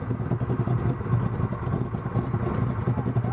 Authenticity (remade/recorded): recorded